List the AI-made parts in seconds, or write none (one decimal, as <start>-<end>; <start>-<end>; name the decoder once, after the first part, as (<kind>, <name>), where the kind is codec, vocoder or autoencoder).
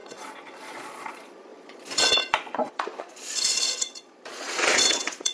0.0-5.3 (vocoder, Vocos)